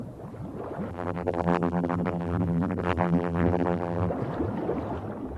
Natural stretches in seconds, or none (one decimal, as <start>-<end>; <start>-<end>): 0.0-0.9; 4.1-5.4